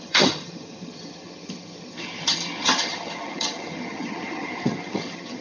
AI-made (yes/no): yes